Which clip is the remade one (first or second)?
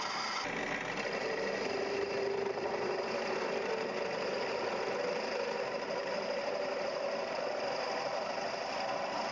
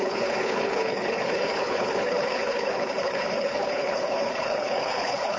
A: second